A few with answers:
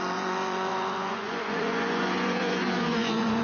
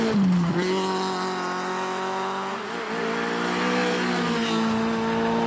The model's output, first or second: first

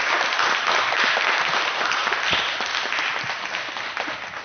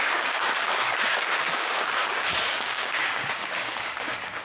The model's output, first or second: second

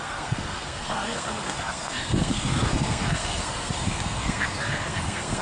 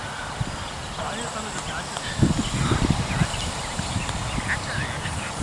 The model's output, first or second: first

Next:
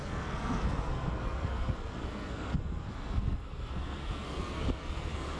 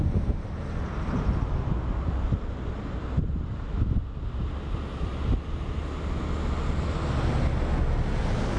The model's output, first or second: first